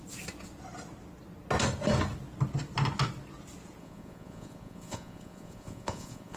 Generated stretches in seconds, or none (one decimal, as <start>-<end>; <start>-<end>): 3.8-6.4